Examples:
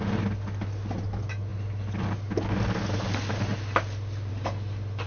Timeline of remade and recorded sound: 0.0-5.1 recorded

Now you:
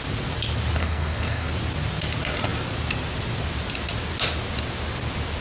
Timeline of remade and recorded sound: 0.0-0.8 recorded; 0.8-1.5 remade; 1.5-5.4 recorded

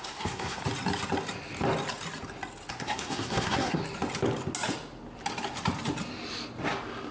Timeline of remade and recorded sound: 0.0-0.6 remade; 0.6-2.7 recorded; 2.7-3.8 remade; 3.8-7.1 recorded

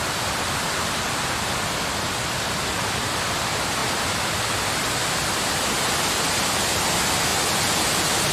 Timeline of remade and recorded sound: 0.0-8.3 recorded

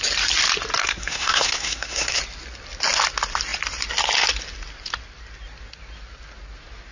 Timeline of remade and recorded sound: 0.0-0.8 recorded; 0.8-2.2 remade; 2.2-6.9 recorded